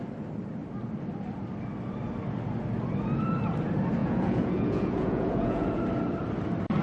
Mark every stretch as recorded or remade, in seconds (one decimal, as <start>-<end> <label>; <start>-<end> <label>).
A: 0.0-4.0 recorded; 4.0-5.8 remade; 5.8-6.8 recorded